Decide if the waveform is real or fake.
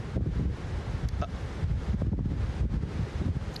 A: real